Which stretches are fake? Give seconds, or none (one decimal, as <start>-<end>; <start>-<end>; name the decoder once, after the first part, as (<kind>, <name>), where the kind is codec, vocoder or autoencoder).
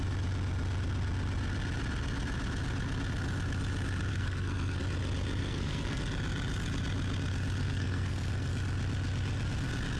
4.1-4.8 (codec, SNAC); 5.4-6.0; 7.6-8.5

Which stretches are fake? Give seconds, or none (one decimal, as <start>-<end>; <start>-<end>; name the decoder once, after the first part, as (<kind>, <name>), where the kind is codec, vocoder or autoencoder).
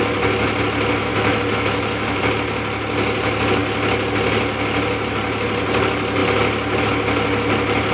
1.1-2.2 (autoencoder, DAC-VAE)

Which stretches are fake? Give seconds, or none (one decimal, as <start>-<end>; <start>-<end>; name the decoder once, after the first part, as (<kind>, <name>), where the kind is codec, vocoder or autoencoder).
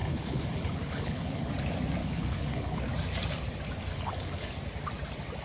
0.0-1.5 (codec, HILCodec); 2.0-2.8; 3.9-4.5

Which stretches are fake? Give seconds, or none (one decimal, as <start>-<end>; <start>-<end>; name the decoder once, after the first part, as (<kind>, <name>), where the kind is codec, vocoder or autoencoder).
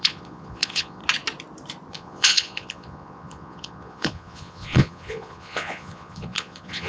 0.0-1.0 (vocoder, Vocos); 1.9-6.9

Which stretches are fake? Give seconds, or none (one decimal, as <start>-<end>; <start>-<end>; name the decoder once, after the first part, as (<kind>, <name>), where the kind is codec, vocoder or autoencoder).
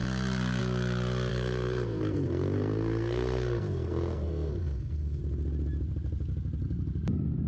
1.3-5.2 (codec, SNAC)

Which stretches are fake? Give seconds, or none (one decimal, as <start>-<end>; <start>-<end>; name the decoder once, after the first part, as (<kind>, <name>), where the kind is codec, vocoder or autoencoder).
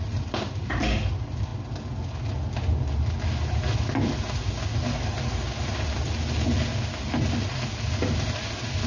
0.0-1.5 (vocoder, BigVGAN v2); 5.7-6.7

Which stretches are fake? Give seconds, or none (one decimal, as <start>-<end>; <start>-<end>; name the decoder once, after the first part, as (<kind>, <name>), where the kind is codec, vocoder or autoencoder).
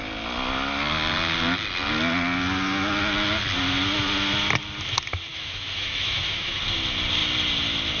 5.3-6.6 (autoencoder, DAC-VAE)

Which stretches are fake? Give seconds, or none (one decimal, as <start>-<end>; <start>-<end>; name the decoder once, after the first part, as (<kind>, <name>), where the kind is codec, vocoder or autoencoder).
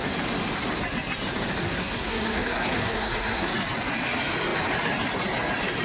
1.6-3.5 (codec, SNAC)